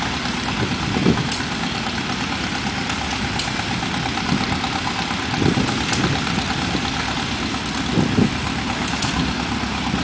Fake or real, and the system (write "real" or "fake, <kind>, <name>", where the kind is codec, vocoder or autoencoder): real